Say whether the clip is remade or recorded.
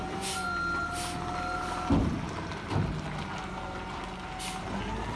recorded